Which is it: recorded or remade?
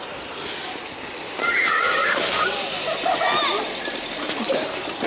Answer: recorded